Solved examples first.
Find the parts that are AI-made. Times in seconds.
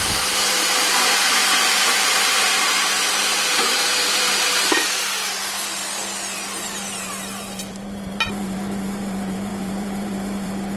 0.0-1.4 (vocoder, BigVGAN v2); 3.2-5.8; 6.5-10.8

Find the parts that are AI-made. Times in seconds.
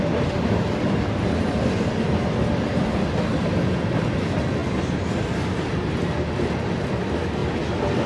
none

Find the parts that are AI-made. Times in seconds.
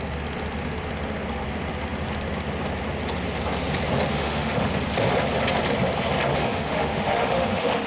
4.1-4.7 (autoencoder, DAC-VAE); 6.3-7.9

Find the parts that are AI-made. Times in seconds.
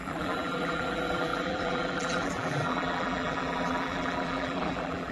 0.0-5.1 (vocoder, BigVGAN v2)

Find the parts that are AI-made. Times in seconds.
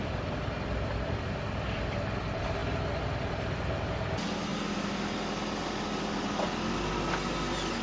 none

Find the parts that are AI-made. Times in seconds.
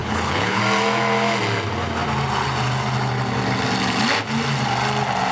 0.0-0.6 (codec, HILCodec)